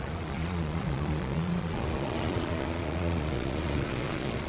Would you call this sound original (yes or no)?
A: no